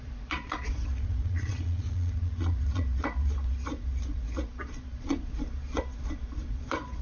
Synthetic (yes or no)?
yes